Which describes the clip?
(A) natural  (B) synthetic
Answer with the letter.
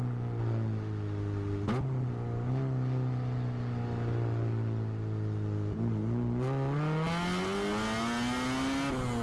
A